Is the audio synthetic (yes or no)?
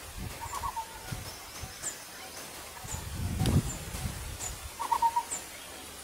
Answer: no